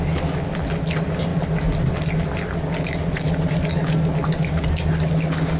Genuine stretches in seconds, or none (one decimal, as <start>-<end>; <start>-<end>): 0.0-5.6